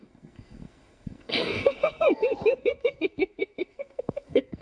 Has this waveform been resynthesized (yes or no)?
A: yes